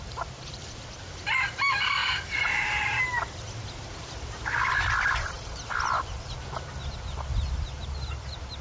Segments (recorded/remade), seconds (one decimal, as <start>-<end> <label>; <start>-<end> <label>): 0.0-2.0 remade; 2.0-5.0 recorded; 5.0-8.6 remade